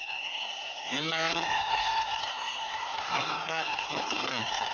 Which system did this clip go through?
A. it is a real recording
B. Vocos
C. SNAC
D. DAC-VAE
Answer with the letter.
C